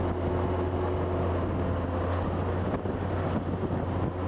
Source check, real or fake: real